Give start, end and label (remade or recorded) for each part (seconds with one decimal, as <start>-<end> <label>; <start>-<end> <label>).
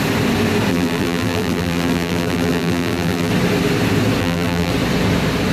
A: 0.0-0.7 recorded; 0.7-3.3 remade; 3.3-4.2 recorded; 4.2-4.7 remade; 4.7-5.5 recorded